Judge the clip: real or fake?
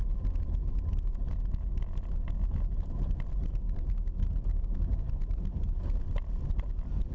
real